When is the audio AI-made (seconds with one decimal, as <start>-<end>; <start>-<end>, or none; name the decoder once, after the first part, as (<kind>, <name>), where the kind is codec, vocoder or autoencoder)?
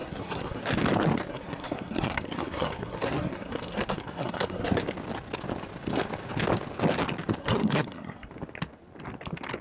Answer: 0.0-0.6 (codec, SNAC); 1.3-4.8; 7.4-8.3